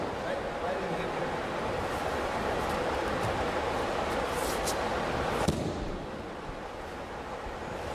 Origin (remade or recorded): recorded